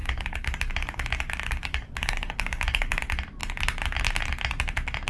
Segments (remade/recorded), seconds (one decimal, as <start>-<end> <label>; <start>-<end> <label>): 0.0-3.0 remade; 3.0-5.1 recorded

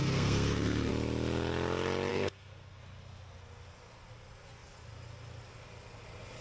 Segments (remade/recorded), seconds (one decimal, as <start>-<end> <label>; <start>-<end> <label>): 0.0-0.9 remade; 0.9-2.1 recorded; 2.1-2.8 remade; 2.8-6.4 recorded

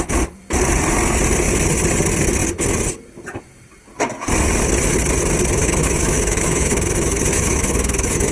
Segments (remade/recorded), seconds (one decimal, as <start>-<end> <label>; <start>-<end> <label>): 0.0-5.6 recorded; 5.6-8.3 remade

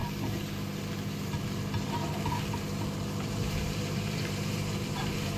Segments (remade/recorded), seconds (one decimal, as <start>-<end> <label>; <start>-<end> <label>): 0.0-3.2 recorded; 3.2-5.4 remade

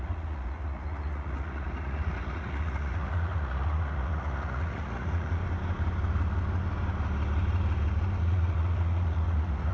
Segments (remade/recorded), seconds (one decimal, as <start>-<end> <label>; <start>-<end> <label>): 0.0-5.4 remade; 5.4-8.2 recorded; 8.2-9.7 remade